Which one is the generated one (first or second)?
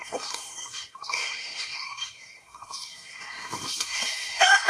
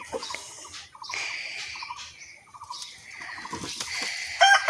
first